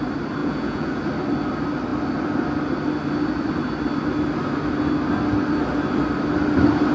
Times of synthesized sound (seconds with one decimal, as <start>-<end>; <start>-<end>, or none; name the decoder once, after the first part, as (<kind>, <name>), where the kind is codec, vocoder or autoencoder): 0.4-1.0 (vocoder, Vocos)